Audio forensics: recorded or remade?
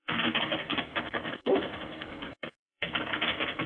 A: remade